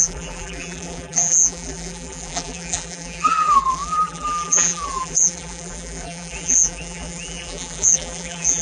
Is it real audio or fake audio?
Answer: fake